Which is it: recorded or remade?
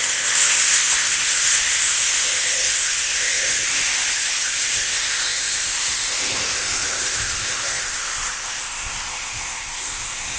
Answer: remade